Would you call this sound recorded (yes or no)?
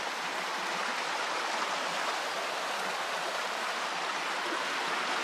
yes